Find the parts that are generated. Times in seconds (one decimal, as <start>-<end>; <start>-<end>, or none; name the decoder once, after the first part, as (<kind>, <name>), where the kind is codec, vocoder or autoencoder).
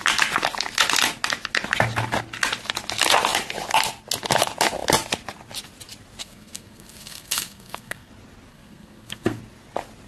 6.2-8.1 (codec, SNAC); 8.5-9.4